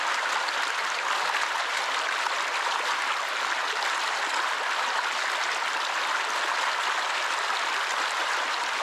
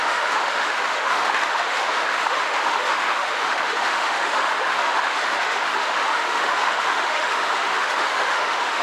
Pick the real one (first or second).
first